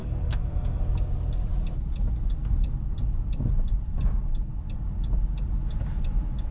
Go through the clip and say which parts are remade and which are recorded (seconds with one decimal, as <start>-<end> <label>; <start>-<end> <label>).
0.0-0.8 remade; 0.8-6.5 recorded